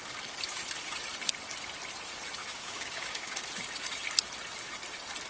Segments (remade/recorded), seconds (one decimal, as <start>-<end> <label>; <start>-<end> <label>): 0.0-2.4 recorded; 2.4-3.4 remade; 3.4-5.3 recorded